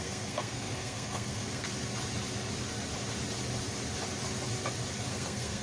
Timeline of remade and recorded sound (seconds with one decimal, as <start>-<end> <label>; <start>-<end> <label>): 0.0-1.7 remade; 1.7-5.1 recorded; 5.1-5.6 remade